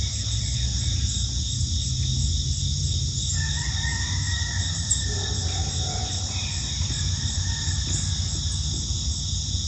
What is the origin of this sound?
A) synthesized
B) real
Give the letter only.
B